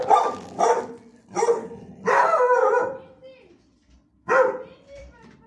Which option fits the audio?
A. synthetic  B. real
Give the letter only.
A